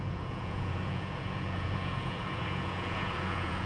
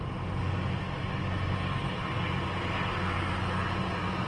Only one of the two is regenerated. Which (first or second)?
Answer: first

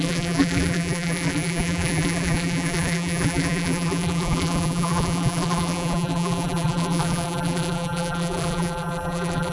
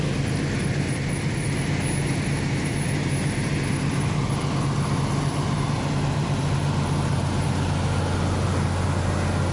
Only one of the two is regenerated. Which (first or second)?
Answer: first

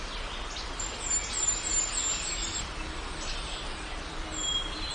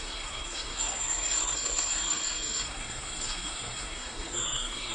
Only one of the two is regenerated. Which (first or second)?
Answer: second